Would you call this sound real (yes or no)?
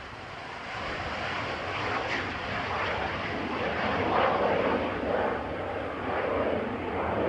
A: yes